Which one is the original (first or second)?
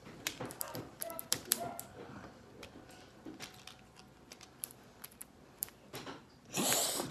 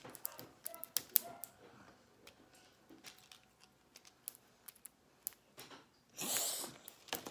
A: second